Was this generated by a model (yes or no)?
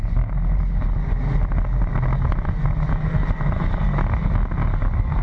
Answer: no